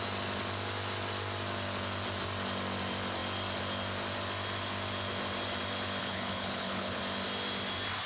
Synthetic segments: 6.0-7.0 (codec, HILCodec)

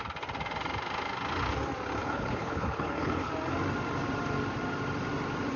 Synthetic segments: 2.0-3.3 (codec, HILCodec)

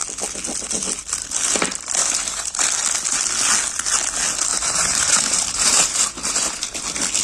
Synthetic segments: 2.0-2.6 (vocoder, BigVGAN v2); 4.5-6.8

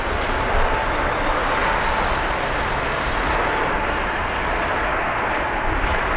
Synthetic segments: none

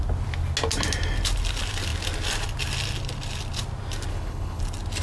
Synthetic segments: 4.1-4.6 (codec, HILCodec)

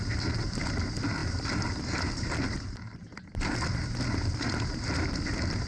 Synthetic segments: none